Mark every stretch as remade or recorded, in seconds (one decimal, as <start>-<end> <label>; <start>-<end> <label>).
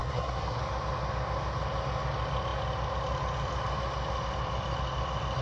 0.0-0.6 remade; 0.6-5.4 recorded